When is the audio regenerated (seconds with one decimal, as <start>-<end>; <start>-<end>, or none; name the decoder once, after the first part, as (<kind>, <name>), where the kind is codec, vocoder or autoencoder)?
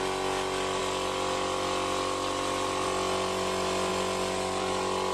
none